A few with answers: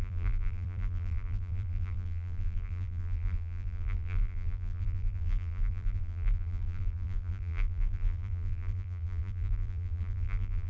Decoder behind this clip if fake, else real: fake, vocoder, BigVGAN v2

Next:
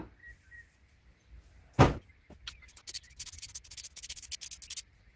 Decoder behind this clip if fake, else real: real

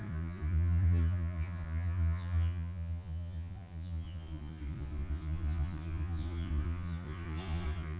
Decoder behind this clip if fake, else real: fake, vocoder, Vocos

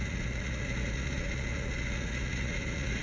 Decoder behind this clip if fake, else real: fake, vocoder, Vocos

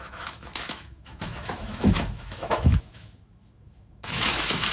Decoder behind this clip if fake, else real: fake, autoencoder, DAC-VAE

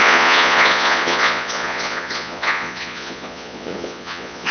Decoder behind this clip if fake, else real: fake, vocoder, Vocos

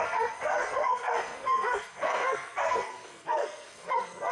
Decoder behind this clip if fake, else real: fake, codec, SNAC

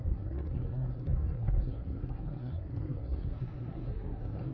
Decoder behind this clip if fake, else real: fake, codec, SNAC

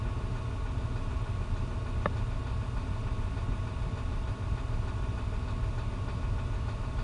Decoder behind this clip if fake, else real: real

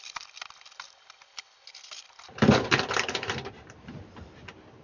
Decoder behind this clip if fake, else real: fake, vocoder, BigVGAN v2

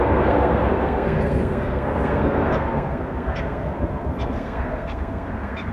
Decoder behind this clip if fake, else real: fake, codec, SNAC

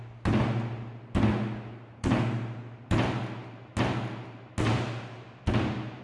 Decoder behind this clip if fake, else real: real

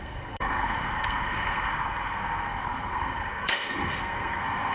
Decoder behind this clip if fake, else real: fake, codec, SNAC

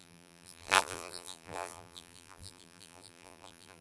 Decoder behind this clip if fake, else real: fake, vocoder, BigVGAN v2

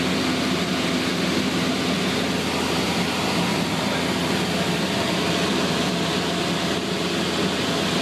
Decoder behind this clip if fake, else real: real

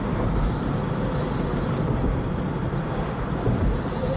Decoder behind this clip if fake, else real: real